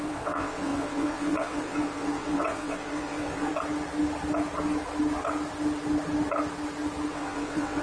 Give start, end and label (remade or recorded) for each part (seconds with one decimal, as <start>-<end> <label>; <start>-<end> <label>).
0.0-3.5 remade; 3.5-7.1 recorded; 7.1-7.8 remade